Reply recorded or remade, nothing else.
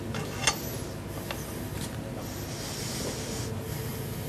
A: recorded